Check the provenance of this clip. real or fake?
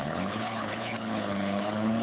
fake